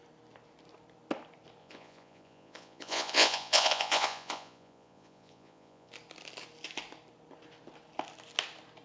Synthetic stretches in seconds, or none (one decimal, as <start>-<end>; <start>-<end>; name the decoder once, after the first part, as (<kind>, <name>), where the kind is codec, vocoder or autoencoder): 1.6-5.9 (vocoder, Vocos)